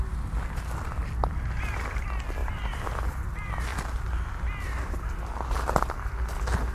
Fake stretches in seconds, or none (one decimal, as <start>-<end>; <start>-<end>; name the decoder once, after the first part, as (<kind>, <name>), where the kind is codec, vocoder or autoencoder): 2.4-3.2 (vocoder, BigVGAN v2)